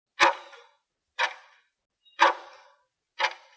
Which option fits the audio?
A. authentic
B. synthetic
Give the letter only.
A